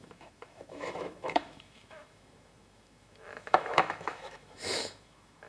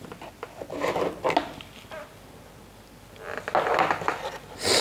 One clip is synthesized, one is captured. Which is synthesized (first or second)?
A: first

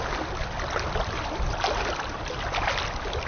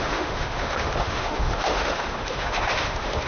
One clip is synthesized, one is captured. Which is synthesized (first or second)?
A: second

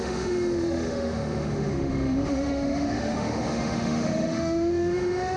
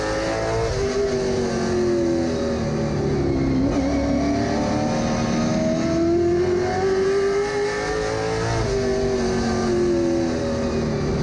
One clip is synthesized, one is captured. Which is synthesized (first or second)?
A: first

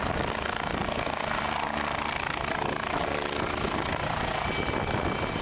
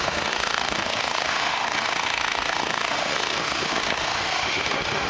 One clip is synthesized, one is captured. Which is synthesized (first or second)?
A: second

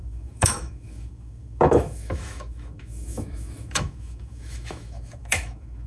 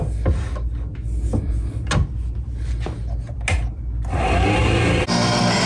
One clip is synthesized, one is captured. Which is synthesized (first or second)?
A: first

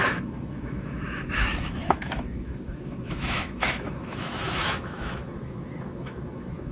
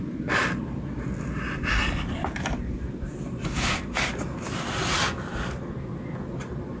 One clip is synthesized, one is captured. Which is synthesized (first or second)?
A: first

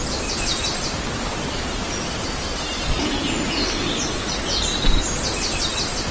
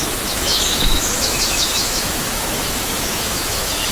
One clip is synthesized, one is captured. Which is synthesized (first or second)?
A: second